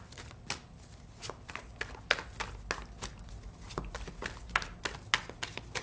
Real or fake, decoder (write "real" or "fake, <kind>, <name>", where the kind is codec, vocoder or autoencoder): real